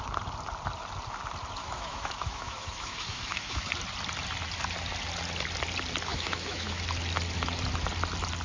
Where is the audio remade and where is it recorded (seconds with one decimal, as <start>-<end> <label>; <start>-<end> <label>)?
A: 0.0-1.6 recorded; 1.6-3.6 remade; 3.6-6.1 recorded; 6.1-6.8 remade; 6.8-8.4 recorded